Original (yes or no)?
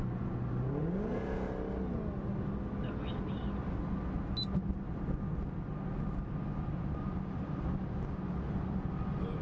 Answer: yes